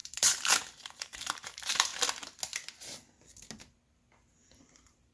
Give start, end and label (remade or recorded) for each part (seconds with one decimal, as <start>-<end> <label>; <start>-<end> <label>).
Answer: 0.0-1.9 remade; 1.9-4.6 recorded; 4.6-5.1 remade